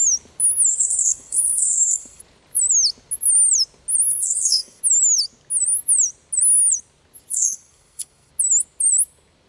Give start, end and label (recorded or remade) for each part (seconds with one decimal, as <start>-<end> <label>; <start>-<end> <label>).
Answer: 0.0-0.7 recorded; 0.7-2.2 remade; 2.2-4.1 recorded; 4.1-4.8 remade; 4.8-7.3 recorded; 7.3-8.3 remade; 8.3-9.5 recorded